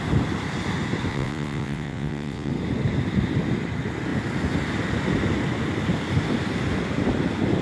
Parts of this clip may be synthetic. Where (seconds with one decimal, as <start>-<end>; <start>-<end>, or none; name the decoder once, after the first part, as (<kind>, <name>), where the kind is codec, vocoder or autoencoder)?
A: 1.1-2.5 (vocoder, WaveNeXt)